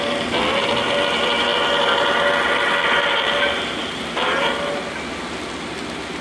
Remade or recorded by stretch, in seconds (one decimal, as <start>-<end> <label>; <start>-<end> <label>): 0.0-6.2 recorded